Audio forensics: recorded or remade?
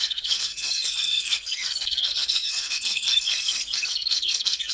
remade